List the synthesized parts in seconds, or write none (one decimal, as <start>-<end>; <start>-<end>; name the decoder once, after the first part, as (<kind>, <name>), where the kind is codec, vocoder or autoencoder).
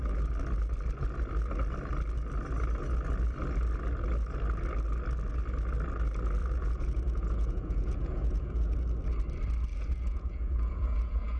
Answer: 6.4-8.8 (vocoder, Vocos); 9.7-11.4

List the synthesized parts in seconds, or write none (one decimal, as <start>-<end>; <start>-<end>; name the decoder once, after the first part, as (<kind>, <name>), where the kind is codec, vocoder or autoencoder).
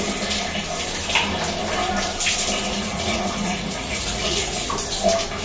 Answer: 2.6-4.7 (vocoder, Vocos)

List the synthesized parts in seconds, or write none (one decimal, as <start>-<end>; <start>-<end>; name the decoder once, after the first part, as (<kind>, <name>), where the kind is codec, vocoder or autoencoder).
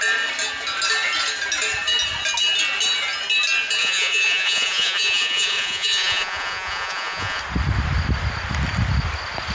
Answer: 3.8-7.4 (vocoder, Vocos)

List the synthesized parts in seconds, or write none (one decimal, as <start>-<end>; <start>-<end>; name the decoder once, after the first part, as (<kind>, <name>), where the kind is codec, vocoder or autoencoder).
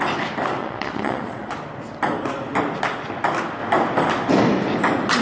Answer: 0.6-1.5 (vocoder, Vocos)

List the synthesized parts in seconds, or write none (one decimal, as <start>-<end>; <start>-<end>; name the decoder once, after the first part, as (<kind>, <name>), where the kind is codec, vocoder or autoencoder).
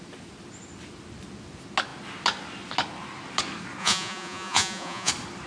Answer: 3.8-5.1 (vocoder, Vocos)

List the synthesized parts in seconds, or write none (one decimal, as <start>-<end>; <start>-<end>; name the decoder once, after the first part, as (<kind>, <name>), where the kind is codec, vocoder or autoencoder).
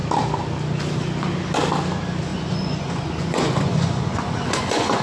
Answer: 2.3-5.0 (vocoder, Vocos)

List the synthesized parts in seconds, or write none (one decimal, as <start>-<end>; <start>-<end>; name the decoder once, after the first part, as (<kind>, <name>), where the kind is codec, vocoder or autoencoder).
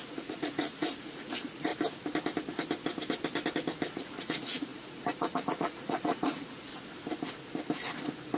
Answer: 0.0-1.7 (vocoder, Vocos); 3.9-6.7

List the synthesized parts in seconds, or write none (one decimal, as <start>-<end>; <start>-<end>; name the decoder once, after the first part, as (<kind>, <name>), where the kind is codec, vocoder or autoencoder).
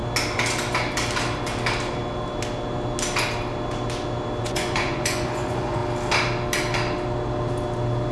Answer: 4.4-5.8 (vocoder, Vocos)